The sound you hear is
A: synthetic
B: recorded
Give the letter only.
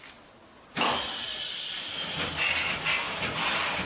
B